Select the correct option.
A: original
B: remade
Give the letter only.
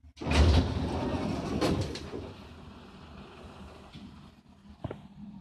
A